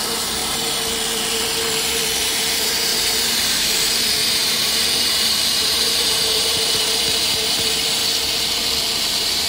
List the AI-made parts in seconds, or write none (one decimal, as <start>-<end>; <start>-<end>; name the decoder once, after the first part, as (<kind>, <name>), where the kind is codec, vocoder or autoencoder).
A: 0.0-0.4 (vocoder, BigVGAN v2); 2.2-8.0; 9.1-9.5